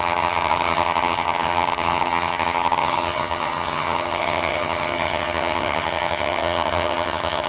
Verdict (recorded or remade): remade